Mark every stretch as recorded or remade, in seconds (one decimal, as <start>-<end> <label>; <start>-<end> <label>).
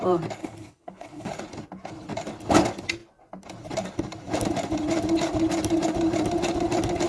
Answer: 0.0-0.4 recorded; 0.4-1.3 remade; 1.3-7.1 recorded